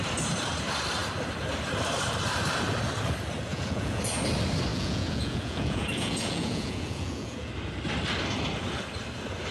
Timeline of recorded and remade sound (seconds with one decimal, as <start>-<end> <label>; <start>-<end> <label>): 0.0-3.5 recorded; 3.5-4.0 remade; 4.0-4.7 recorded; 4.7-7.5 remade; 7.5-9.5 recorded